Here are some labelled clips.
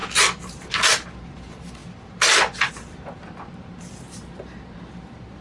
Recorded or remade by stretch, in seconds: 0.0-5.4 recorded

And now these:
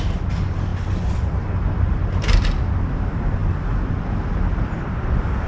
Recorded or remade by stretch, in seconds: 0.0-5.5 recorded

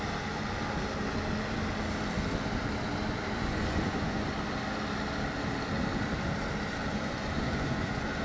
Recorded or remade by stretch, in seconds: 0.0-3.4 recorded; 3.4-4.3 remade; 4.3-6.8 recorded; 6.8-8.2 remade

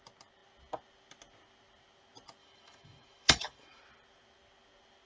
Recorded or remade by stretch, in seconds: 0.0-2.4 recorded; 2.4-3.8 remade; 3.8-5.1 recorded

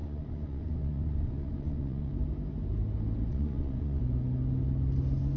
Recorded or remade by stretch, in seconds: 0.0-2.1 remade; 2.1-3.3 recorded; 3.3-4.0 remade; 4.0-5.4 recorded